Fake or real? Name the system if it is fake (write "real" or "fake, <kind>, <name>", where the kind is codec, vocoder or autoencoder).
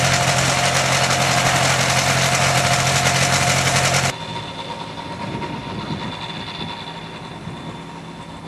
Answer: real